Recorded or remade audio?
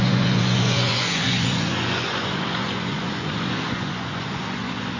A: remade